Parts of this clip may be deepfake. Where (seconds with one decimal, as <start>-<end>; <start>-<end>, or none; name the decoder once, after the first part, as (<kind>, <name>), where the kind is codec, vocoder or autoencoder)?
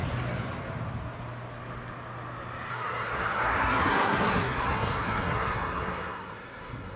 2.7-7.0 (codec, SNAC)